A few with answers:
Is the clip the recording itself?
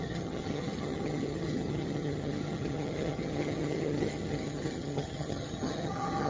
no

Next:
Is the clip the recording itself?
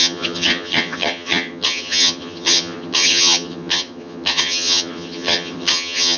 no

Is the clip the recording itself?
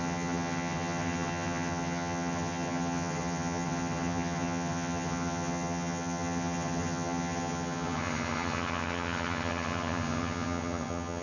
no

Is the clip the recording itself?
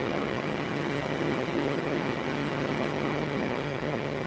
no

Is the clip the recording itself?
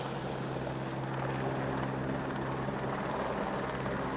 yes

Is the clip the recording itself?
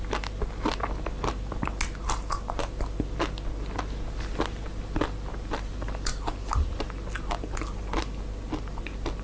yes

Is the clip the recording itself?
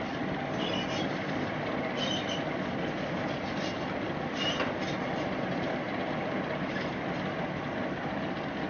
yes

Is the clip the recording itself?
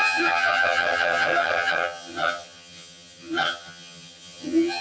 no